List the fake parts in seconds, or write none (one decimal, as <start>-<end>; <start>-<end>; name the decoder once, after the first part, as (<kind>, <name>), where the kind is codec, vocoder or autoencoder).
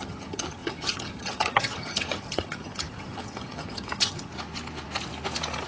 0.0-4.3 (vocoder, HiFi-GAN)